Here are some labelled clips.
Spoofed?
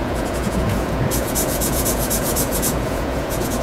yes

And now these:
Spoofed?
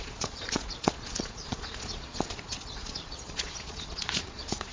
yes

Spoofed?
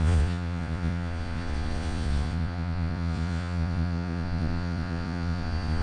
yes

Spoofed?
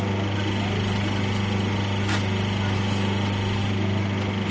no